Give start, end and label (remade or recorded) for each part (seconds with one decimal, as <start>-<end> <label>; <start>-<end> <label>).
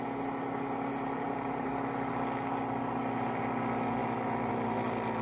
0.0-0.9 recorded; 0.9-1.7 remade; 1.7-5.2 recorded